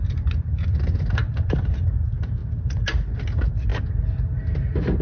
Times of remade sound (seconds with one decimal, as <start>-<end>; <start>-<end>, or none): none